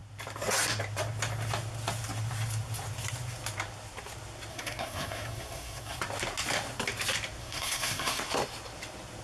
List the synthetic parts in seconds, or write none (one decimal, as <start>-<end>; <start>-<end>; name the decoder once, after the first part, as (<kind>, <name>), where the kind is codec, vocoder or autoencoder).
4.5-6.0 (codec, SNAC); 7.4-8.2